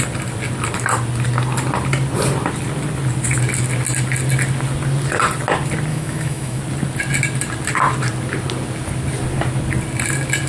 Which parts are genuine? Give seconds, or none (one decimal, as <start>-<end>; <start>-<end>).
0.0-5.9; 6.6-10.5